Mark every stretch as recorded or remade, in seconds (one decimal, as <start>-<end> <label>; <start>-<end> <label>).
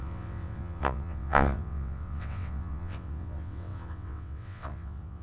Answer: 0.0-5.2 remade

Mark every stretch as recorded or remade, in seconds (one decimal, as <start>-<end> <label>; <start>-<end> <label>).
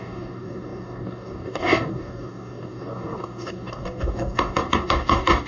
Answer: 0.0-5.5 remade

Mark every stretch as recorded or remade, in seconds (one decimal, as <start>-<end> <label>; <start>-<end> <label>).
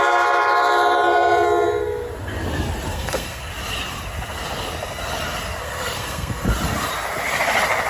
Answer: 0.0-2.9 recorded; 2.9-3.5 remade; 3.5-5.6 recorded; 5.6-6.5 remade; 6.5-7.9 recorded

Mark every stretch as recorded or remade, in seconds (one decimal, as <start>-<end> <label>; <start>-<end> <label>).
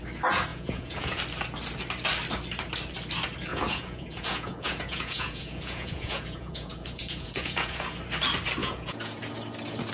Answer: 0.0-0.5 recorded; 0.5-1.2 remade; 1.2-3.5 recorded; 3.5-8.0 remade; 8.0-8.6 recorded; 8.6-9.2 remade; 9.2-9.9 recorded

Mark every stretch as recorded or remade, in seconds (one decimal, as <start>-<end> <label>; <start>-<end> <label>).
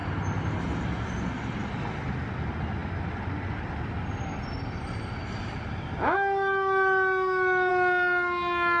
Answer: 0.0-8.8 recorded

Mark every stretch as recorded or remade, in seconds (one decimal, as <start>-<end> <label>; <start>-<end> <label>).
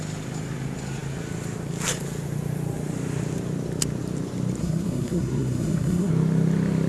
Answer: 0.0-4.6 recorded; 4.6-6.1 remade; 6.1-6.9 recorded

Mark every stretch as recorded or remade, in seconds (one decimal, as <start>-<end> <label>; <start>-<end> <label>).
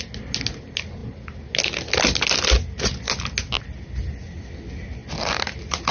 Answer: 0.0-5.9 recorded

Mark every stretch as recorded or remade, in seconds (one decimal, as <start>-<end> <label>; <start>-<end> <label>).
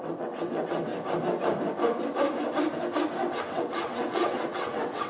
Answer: 0.0-0.9 remade; 0.9-3.4 recorded; 3.4-5.1 remade